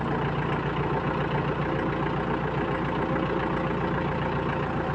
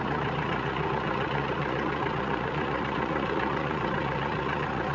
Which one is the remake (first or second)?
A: second